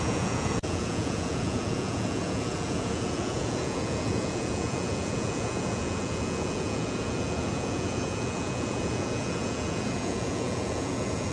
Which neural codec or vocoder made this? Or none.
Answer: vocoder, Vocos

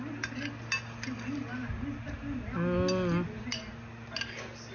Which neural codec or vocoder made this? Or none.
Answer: none